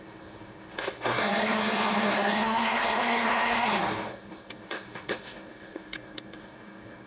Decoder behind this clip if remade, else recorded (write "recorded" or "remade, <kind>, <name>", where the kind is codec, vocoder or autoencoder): remade, codec, SNAC